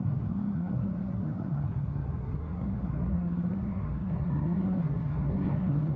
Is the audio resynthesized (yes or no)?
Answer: yes